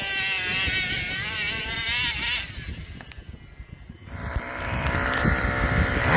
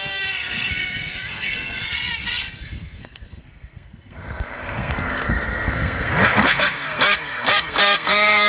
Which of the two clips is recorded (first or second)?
first